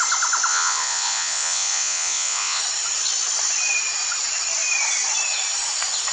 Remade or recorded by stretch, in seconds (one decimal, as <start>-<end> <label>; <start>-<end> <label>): 0.0-0.5 recorded; 0.5-2.6 remade; 2.6-6.1 recorded